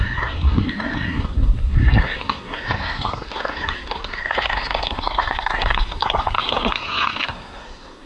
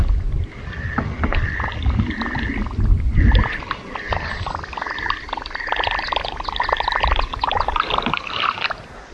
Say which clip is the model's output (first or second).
first